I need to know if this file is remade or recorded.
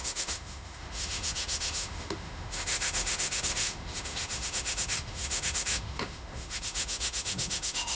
remade